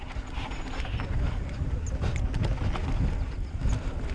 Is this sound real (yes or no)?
yes